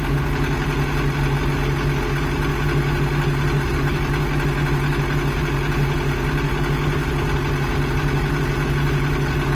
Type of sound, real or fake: real